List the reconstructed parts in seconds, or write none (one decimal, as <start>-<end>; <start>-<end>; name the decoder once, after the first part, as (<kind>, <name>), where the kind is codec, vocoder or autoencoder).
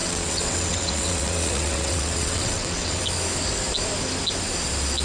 0.0-3.0 (vocoder, WaveNeXt)